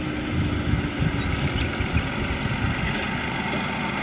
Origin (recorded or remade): recorded